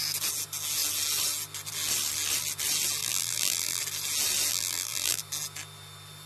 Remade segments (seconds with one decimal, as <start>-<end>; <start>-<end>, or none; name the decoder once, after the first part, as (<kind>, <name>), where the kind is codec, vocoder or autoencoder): 3.0-3.8 (vocoder, BigVGAN v2); 4.5-5.2